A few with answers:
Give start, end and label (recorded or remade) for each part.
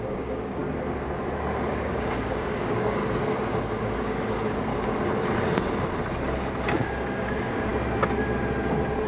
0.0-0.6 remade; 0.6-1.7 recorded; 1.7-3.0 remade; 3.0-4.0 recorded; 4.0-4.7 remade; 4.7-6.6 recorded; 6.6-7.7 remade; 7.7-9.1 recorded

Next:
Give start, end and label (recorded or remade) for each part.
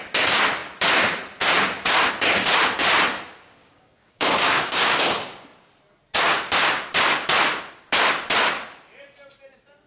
0.0-3.6 recorded; 3.6-5.0 remade; 5.0-9.9 recorded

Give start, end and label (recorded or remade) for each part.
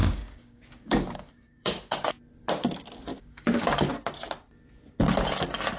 0.0-2.1 remade; 2.1-3.1 recorded; 3.1-4.0 remade; 4.0-5.8 recorded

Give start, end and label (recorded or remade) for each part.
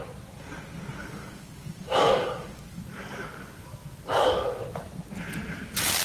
0.0-1.0 recorded; 1.0-4.6 remade; 4.6-6.0 recorded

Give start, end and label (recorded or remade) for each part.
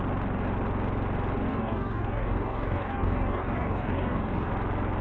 0.0-1.5 recorded; 1.5-4.5 remade; 4.5-5.0 recorded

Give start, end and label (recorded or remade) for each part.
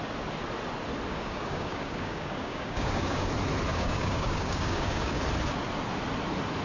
0.0-1.1 recorded; 1.1-3.3 remade; 3.3-3.7 recorded; 3.7-5.2 remade; 5.2-6.6 recorded